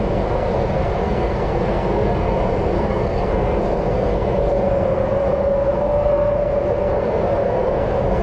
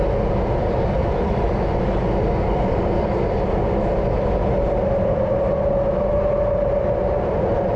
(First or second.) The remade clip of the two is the first